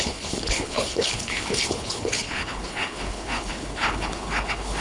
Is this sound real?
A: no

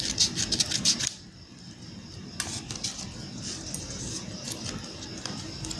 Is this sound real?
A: yes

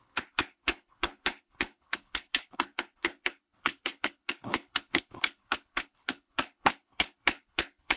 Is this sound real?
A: no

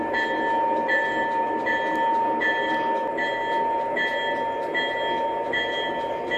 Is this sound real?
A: yes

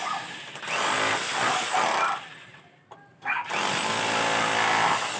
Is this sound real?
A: yes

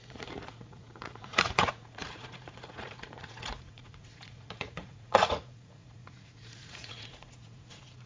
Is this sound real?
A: no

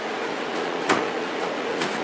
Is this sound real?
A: no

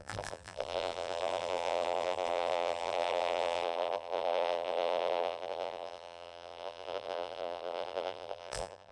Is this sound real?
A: no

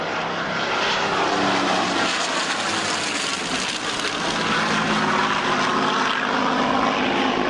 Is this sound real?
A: yes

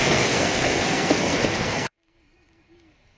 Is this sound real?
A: no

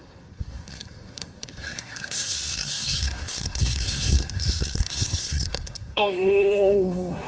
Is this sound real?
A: no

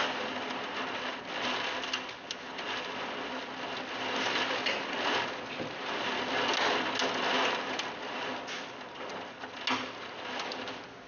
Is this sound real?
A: yes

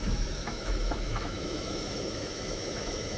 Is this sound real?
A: no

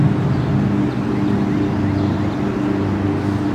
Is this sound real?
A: yes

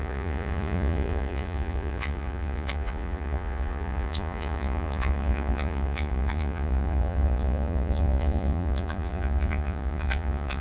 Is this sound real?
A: no